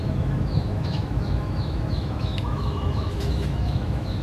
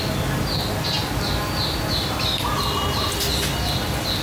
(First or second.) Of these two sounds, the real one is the second